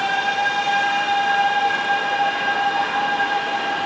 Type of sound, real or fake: real